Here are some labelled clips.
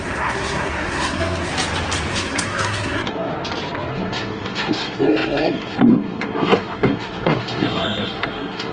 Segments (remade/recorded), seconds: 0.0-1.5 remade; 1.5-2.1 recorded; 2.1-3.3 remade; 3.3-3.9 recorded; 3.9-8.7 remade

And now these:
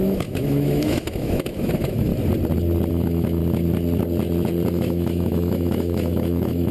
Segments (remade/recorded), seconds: 0.0-2.1 remade; 2.1-2.9 recorded; 2.9-3.4 remade; 3.4-4.7 recorded; 4.7-6.7 remade

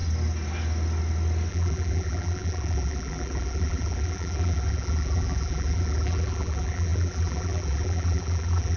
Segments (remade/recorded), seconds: 0.0-1.5 recorded; 1.5-8.8 remade

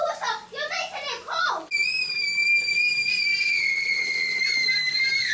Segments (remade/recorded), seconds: 0.0-3.4 recorded; 3.4-4.4 remade; 4.4-5.3 recorded

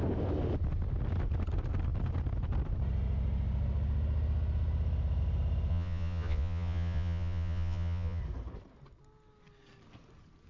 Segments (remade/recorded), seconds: 0.0-5.7 recorded; 5.7-8.2 remade; 8.2-10.5 recorded

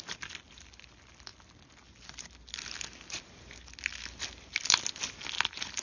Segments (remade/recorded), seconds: 0.0-5.8 recorded